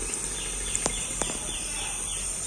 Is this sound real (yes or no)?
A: yes